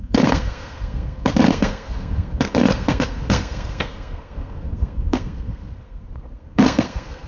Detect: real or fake fake